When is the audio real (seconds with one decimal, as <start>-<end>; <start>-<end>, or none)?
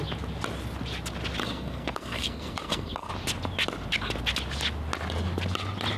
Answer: 0.0-1.4; 3.1-6.0